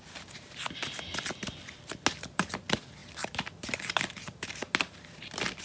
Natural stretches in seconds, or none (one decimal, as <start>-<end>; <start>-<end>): 0.0-5.6